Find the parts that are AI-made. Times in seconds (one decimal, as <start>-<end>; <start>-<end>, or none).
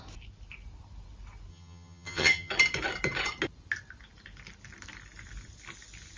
1.5-2.5